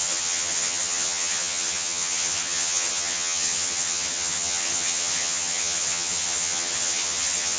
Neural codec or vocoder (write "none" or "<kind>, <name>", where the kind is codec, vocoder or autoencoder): vocoder, HiFi-GAN